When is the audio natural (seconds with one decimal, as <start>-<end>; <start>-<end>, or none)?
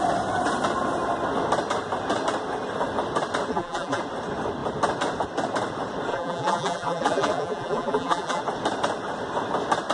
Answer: 0.0-3.5; 4.0-6.1; 8.4-9.9